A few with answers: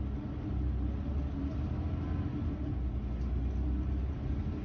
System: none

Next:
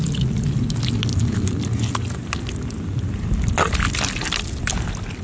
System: none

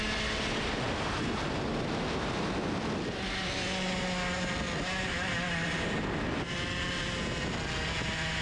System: none